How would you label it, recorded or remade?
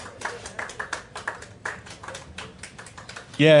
recorded